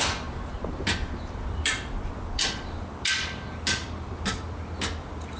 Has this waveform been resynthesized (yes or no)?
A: yes